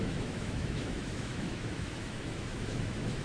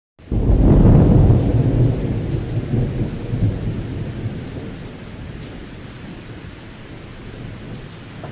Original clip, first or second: second